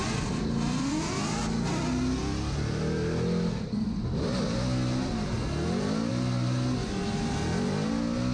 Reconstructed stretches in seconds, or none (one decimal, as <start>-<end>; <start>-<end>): 0.0-1.4